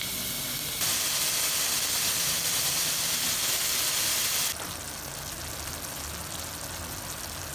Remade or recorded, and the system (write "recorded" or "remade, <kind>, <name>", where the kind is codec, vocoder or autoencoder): recorded